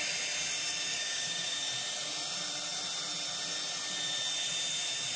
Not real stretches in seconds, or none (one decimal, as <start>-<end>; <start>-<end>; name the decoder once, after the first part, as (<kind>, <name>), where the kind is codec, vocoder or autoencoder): 0.9-1.6 (codec, DAC)